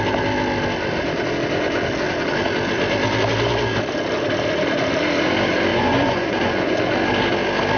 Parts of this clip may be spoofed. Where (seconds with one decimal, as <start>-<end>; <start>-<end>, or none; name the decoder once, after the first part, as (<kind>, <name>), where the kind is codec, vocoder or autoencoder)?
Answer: 5.7-6.7 (vocoder, Vocos)